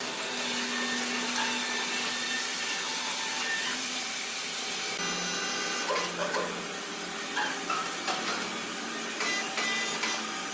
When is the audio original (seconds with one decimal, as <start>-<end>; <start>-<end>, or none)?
0.0-2.5; 4.4-10.5